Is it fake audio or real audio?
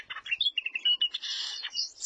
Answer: real